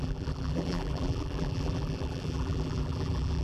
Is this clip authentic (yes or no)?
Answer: no